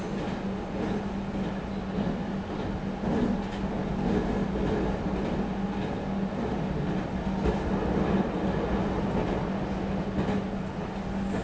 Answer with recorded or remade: recorded